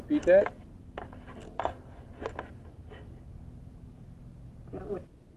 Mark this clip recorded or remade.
recorded